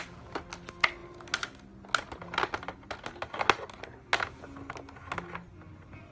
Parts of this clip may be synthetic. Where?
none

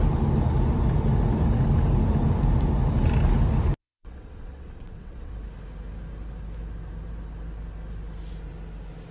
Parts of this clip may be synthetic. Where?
3.8-5.3 (vocoder, WaveNeXt)

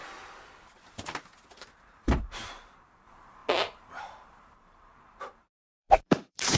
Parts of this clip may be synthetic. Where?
1.5-3.4 (vocoder, BigVGAN v2); 4.0-6.6

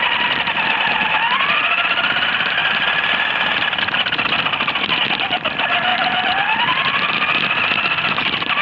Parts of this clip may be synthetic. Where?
2.6-3.8 (vocoder, BigVGAN v2); 5.9-7.1

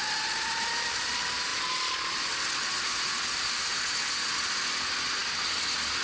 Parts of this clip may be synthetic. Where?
none